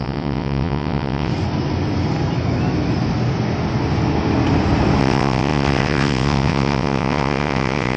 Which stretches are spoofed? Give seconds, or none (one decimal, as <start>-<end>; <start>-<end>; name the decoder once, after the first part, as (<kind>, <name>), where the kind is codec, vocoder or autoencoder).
0.0-1.3 (vocoder, WaveNeXt); 5.0-8.0